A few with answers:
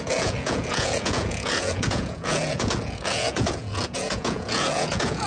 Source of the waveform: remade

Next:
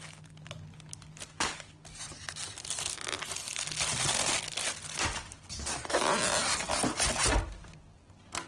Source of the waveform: recorded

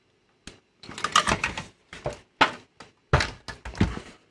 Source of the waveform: recorded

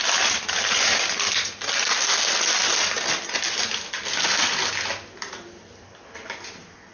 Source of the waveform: recorded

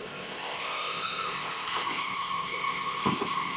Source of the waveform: remade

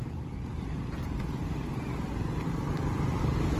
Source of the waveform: recorded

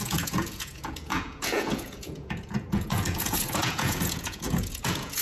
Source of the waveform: remade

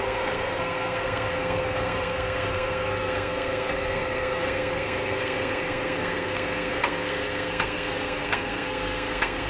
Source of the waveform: remade